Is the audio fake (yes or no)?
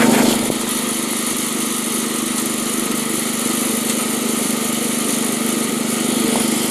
no